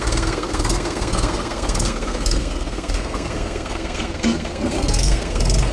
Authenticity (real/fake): fake